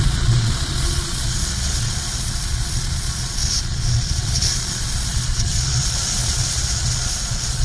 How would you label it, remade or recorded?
remade